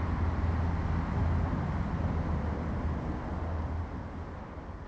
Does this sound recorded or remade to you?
recorded